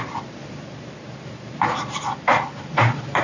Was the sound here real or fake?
fake